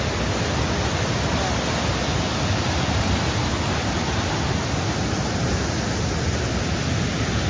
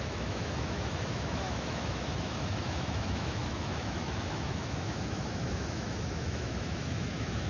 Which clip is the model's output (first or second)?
second